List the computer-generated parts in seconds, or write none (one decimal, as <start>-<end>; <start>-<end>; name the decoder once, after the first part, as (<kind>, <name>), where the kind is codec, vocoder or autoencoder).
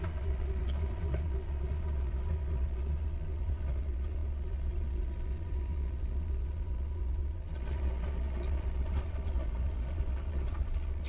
0.0-11.1 (vocoder, Vocos)